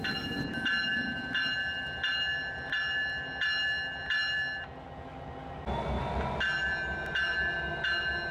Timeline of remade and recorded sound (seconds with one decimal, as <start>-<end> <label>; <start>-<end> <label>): 0.0-8.3 recorded